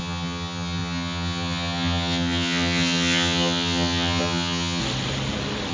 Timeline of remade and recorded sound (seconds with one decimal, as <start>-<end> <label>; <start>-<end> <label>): 0.0-4.8 remade; 4.8-5.7 recorded